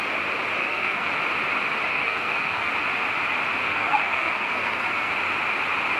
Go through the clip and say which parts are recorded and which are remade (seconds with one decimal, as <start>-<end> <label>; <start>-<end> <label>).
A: 0.0-0.6 recorded; 0.6-1.1 remade; 1.1-1.9 recorded; 1.9-2.7 remade; 2.7-3.6 recorded; 3.6-5.1 remade; 5.1-6.0 recorded